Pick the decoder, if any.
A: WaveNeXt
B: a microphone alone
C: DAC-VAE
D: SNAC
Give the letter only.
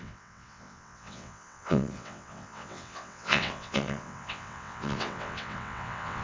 A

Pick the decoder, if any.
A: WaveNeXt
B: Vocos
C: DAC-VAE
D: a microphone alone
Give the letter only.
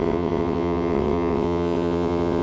A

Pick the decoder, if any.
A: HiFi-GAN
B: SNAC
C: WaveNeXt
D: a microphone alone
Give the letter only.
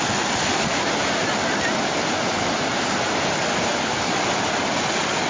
D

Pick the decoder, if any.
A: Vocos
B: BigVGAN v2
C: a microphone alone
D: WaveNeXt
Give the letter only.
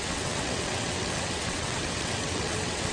D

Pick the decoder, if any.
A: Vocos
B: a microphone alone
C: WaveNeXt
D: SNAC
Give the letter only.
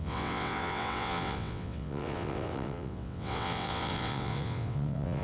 C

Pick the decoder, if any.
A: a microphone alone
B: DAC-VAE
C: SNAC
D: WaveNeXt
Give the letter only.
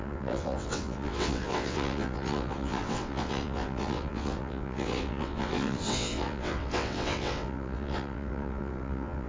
D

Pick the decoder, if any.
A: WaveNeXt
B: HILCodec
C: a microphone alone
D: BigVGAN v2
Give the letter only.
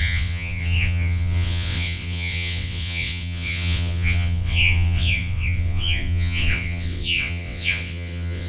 A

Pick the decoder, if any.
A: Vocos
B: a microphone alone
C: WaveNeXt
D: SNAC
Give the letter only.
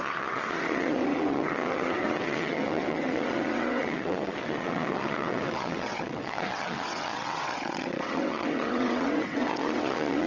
C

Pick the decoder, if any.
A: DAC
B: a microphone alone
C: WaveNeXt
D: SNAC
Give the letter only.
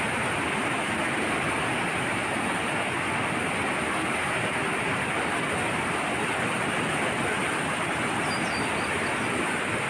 B